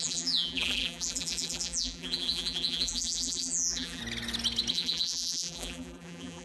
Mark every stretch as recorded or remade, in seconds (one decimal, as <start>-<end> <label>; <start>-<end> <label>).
0.0-4.0 remade; 4.0-4.7 recorded; 4.7-6.4 remade